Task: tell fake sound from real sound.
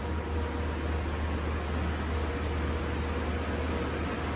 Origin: real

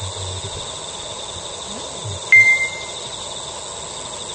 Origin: real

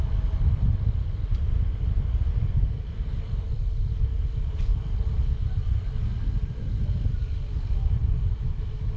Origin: real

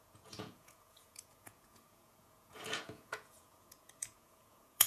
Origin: fake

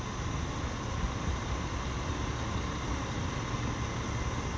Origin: real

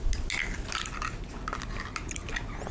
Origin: real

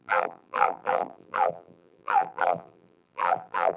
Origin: fake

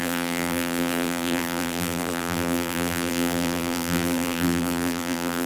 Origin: fake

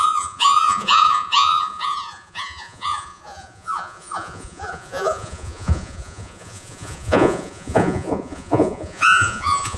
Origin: fake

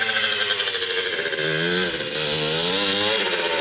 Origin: real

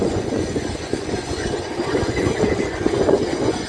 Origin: fake